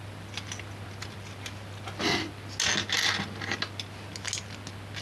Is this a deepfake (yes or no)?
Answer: no